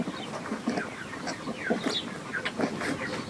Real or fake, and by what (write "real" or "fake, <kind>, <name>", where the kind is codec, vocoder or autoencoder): real